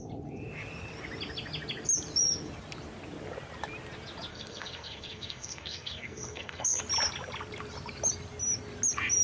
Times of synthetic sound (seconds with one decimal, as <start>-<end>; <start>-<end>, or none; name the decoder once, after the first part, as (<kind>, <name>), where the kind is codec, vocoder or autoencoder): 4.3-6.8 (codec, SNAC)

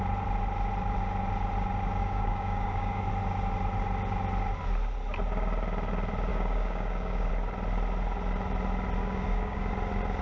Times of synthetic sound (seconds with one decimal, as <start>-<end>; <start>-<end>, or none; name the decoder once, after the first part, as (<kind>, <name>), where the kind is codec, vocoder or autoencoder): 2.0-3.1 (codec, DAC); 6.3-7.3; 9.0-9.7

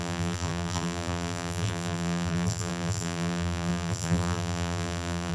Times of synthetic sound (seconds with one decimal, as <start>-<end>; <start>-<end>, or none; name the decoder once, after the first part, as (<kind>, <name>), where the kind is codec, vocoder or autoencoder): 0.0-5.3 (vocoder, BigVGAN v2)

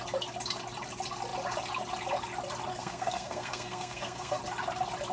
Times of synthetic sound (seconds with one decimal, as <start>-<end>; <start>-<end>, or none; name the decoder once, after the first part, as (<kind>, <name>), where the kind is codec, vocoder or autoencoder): 2.7-4.4 (codec, SNAC)

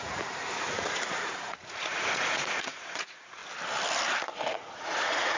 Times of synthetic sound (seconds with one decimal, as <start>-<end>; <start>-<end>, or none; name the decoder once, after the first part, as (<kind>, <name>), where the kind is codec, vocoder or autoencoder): 0.0-3.4 (vocoder, Vocos); 4.5-5.4